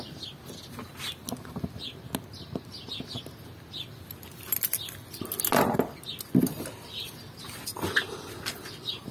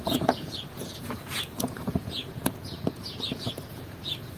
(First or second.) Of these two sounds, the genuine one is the first